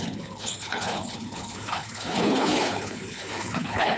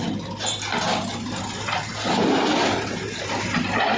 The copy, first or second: first